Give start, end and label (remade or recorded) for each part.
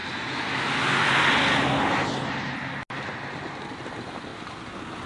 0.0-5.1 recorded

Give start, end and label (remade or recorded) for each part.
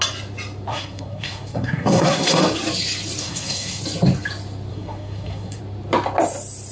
0.0-0.7 recorded; 0.7-2.4 remade; 2.4-3.2 recorded; 3.2-3.8 remade; 3.8-4.7 recorded; 4.7-5.6 remade; 5.6-6.7 recorded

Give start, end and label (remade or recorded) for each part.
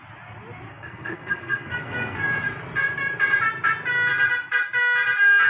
0.0-0.7 recorded; 0.7-2.3 remade; 2.3-5.5 recorded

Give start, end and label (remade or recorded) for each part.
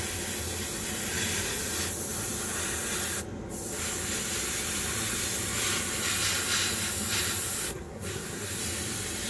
0.0-7.7 recorded; 7.7-8.6 remade; 8.6-9.3 recorded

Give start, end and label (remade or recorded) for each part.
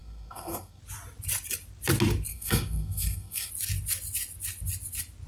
0.0-0.8 remade; 0.8-2.3 recorded; 2.3-3.5 remade; 3.5-5.3 recorded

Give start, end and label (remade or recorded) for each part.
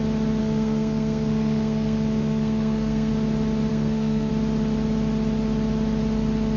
0.0-0.4 recorded; 0.4-3.1 remade; 3.1-3.7 recorded; 3.7-4.3 remade; 4.3-6.6 recorded